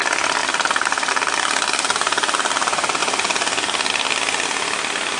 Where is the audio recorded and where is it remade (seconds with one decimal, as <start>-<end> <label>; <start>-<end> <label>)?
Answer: 0.0-5.2 recorded